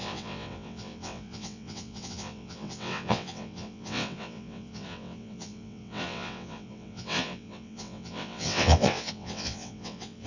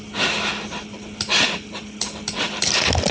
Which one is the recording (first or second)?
second